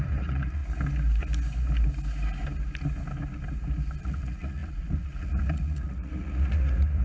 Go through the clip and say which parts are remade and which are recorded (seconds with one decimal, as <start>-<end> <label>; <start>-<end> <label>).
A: 0.0-0.6 remade; 0.6-4.0 recorded; 4.0-7.0 remade

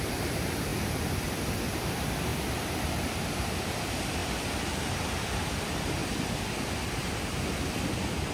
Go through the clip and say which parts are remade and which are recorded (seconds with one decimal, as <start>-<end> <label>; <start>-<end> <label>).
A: 0.0-0.7 remade; 0.7-1.8 recorded; 1.8-2.3 remade; 2.3-3.0 recorded; 3.0-6.0 remade; 6.0-7.7 recorded; 7.7-8.3 remade

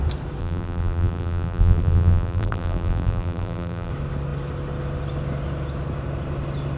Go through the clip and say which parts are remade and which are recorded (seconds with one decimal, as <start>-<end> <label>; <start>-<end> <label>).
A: 0.0-0.4 recorded; 0.4-3.9 remade; 3.9-6.8 recorded

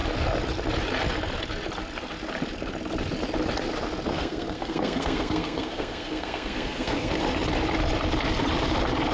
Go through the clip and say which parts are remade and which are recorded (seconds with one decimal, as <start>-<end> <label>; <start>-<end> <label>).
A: 0.0-4.1 recorded; 4.1-7.2 remade; 7.2-9.1 recorded

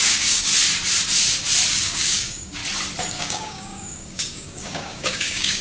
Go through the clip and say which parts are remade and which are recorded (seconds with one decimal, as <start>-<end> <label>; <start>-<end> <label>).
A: 0.0-0.5 remade; 0.5-1.7 recorded; 1.7-2.6 remade; 2.6-3.1 recorded; 3.1-5.6 remade

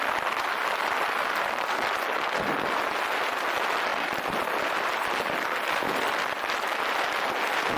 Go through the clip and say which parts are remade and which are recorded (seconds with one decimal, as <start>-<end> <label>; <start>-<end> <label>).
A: 0.0-3.9 recorded; 3.9-5.0 remade; 5.0-7.8 recorded

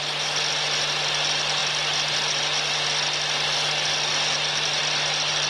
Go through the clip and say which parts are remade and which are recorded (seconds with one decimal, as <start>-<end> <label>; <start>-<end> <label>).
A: 0.0-5.5 recorded

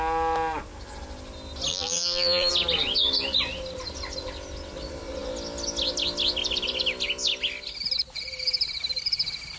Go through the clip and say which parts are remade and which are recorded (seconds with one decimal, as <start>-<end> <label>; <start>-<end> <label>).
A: 0.0-1.7 recorded; 1.7-2.5 remade; 2.5-9.6 recorded